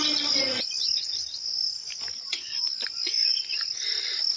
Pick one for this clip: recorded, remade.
recorded